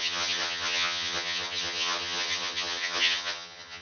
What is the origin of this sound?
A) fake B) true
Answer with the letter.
A